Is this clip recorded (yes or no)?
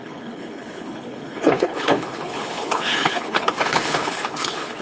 no